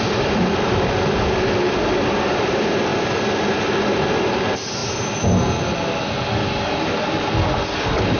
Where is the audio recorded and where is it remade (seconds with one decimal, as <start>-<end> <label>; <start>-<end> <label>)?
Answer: 0.0-8.2 recorded

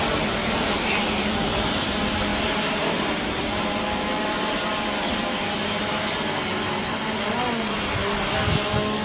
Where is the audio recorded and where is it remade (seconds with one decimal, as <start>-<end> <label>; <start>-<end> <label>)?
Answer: 0.0-0.4 recorded; 0.4-1.9 remade; 1.9-2.3 recorded; 2.3-3.7 remade; 3.7-9.0 recorded

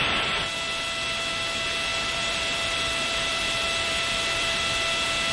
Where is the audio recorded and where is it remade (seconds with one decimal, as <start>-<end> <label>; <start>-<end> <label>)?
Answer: 0.0-1.9 recorded; 1.9-4.6 remade; 4.6-5.3 recorded